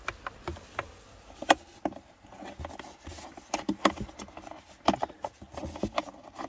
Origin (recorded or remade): recorded